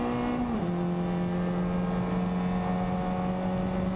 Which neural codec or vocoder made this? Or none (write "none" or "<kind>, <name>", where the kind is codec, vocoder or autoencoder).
none